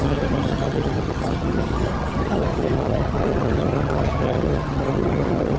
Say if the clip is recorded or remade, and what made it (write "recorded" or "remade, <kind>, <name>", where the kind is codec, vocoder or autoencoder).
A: remade, vocoder, HiFi-GAN